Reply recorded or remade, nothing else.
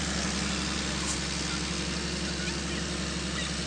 recorded